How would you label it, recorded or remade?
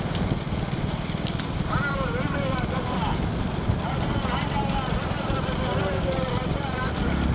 recorded